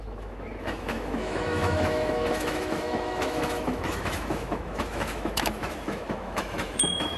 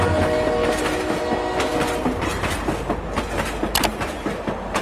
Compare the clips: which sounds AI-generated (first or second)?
first